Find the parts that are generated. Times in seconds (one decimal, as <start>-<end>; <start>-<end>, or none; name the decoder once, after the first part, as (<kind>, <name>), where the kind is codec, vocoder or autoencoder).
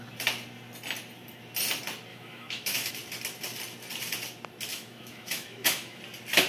2.1-2.9 (autoencoder, DAC-VAE); 4.7-6.0